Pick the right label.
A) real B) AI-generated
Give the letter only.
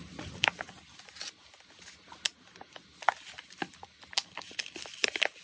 A